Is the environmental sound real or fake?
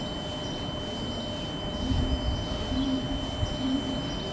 real